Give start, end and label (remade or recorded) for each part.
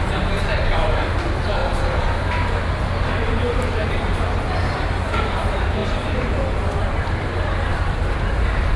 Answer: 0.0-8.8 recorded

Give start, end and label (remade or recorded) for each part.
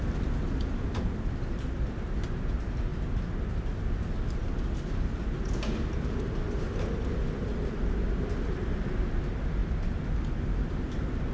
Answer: 0.0-11.3 recorded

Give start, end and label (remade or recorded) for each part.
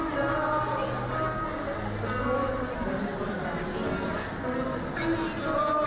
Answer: 0.0-2.4 recorded; 2.4-3.0 remade; 3.0-5.9 recorded